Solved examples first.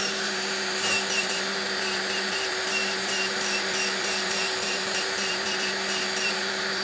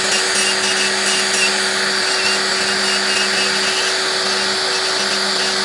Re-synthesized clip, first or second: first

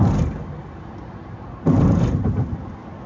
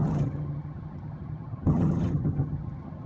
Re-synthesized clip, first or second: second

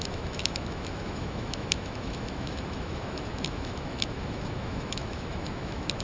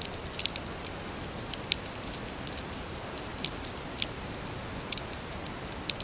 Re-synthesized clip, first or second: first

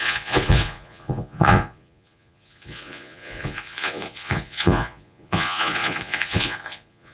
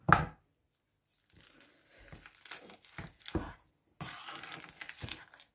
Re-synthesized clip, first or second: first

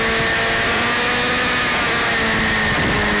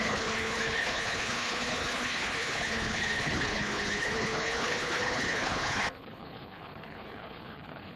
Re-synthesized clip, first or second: second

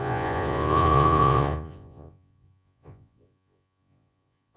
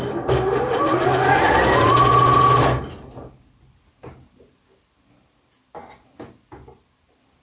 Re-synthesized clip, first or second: first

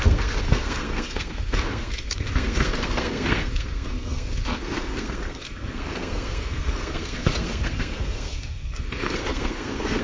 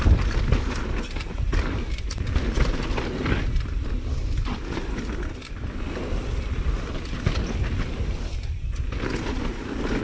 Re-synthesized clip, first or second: first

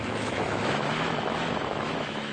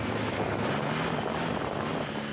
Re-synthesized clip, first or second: first